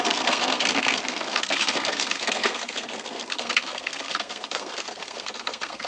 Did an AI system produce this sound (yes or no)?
yes